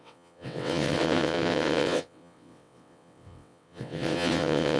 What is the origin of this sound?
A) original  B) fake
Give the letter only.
B